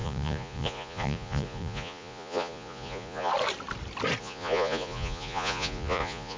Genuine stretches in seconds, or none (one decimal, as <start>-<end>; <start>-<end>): 3.3-4.2